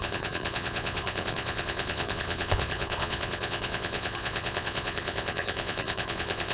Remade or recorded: remade